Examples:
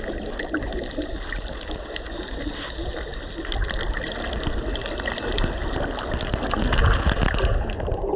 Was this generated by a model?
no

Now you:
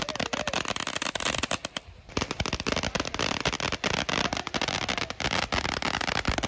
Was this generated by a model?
no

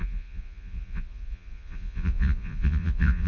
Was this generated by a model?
yes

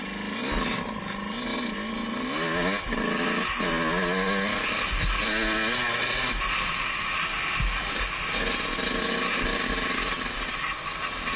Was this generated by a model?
no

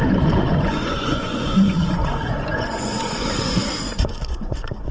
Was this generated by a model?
yes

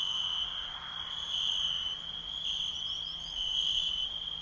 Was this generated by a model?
no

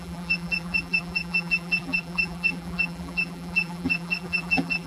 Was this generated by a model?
yes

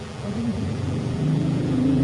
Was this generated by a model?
yes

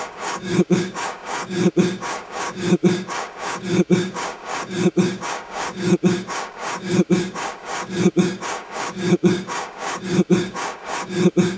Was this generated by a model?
yes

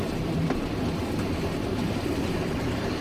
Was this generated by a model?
no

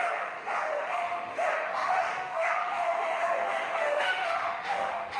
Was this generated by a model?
yes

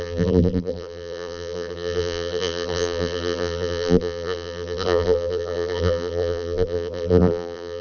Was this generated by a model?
yes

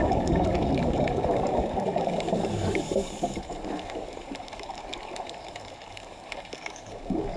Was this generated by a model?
yes